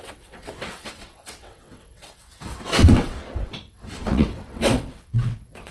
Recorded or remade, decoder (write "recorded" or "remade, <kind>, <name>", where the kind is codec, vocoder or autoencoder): remade, vocoder, WaveNeXt